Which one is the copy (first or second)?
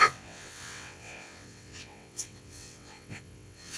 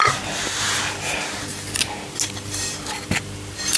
first